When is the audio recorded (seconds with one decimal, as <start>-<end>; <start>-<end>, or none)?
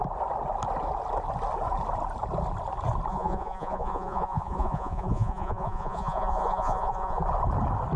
0.0-3.1; 7.2-8.0